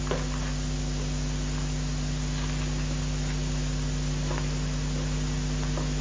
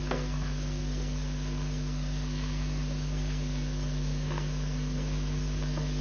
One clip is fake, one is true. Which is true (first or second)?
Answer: first